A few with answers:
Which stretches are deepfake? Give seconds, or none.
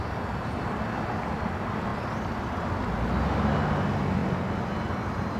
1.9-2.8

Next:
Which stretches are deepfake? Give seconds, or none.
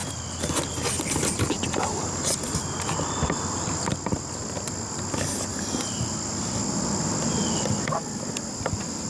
none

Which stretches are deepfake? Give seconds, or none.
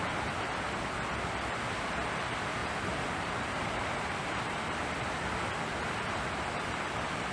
2.6-5.2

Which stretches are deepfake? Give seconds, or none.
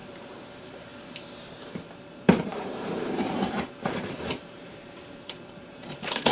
0.0-0.9; 1.7-6.3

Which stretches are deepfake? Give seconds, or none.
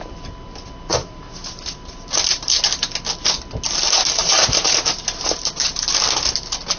0.9-2.6; 4.2-5.7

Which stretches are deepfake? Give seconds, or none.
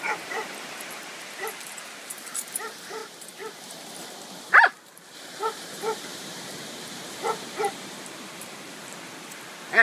0.0-9.8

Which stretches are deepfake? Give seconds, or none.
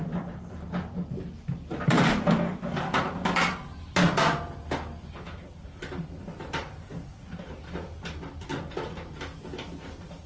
0.0-8.5; 9.6-10.3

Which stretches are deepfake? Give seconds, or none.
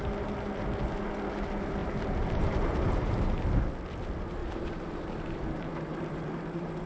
1.8-3.4; 4.4-6.9